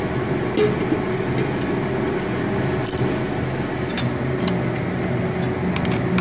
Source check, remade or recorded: recorded